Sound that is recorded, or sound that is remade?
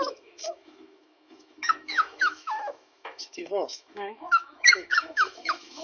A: remade